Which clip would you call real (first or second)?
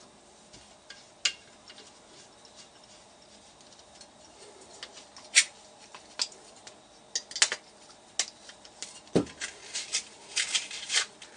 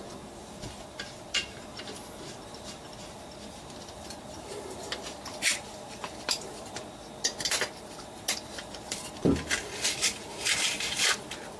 first